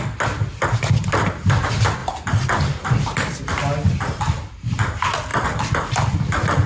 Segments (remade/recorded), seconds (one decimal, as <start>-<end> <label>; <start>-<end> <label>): 0.0-2.0 recorded; 2.0-3.4 remade; 3.4-5.3 recorded; 5.3-6.7 remade